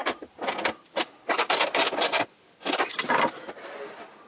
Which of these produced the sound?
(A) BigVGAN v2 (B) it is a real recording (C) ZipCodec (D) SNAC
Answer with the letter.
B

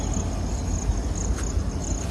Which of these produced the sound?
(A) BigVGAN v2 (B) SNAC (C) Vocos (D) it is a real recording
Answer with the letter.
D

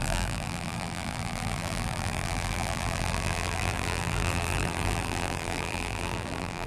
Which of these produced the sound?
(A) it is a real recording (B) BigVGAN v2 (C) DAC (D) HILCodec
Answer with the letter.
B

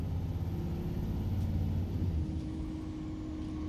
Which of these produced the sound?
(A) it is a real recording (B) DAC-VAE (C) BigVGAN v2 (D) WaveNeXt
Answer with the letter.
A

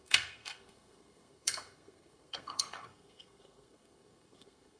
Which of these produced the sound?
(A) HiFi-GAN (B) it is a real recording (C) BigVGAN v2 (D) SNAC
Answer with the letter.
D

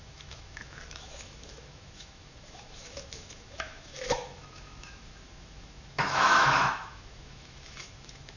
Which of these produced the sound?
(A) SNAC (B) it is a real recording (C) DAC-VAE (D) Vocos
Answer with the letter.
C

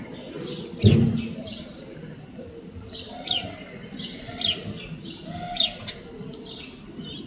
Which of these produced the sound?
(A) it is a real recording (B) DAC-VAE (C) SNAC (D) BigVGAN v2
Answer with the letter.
A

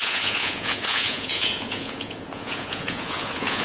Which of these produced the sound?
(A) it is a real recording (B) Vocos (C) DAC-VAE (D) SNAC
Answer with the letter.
B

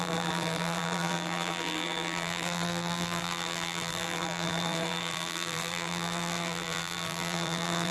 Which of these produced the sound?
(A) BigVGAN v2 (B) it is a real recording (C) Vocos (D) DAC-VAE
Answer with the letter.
A